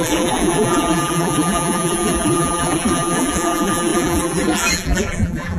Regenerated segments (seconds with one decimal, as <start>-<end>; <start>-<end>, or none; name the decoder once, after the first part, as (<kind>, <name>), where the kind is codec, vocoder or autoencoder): 0.0-5.6 (vocoder, BigVGAN v2)